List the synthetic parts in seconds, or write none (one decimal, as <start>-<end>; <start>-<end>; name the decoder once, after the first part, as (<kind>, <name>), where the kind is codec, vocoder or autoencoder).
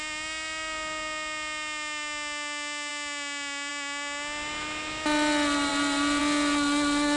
none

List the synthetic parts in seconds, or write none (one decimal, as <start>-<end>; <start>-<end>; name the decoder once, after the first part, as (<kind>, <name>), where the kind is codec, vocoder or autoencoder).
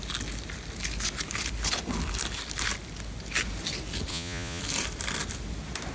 4.1-4.6 (vocoder, Vocos)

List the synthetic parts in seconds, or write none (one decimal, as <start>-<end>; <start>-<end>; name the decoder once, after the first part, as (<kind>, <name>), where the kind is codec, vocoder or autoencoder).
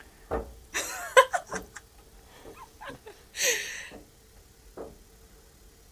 none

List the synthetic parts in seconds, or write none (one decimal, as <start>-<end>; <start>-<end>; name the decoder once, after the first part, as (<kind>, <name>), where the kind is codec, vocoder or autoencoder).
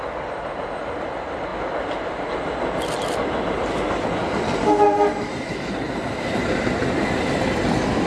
none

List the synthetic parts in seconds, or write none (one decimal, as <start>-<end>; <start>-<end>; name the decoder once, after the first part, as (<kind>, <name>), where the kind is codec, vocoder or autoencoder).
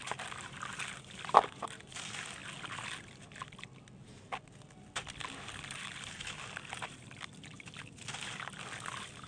none